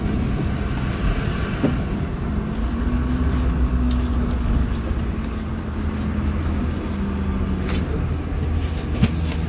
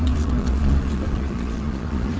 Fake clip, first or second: second